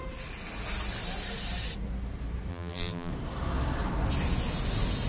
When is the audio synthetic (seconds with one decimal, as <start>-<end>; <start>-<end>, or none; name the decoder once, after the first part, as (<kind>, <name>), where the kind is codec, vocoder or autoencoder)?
2.5-3.1 (vocoder, BigVGAN v2)